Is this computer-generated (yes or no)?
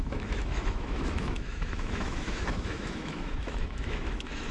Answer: yes